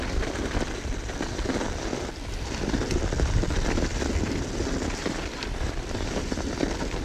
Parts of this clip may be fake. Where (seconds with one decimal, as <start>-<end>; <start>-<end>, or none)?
0.0-0.4; 1.1-7.0